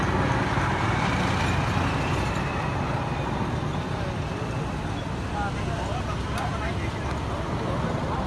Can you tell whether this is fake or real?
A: real